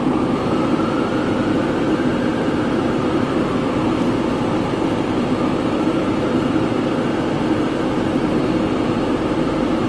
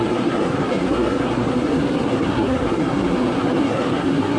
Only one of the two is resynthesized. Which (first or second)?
second